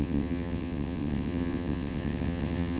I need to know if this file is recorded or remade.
remade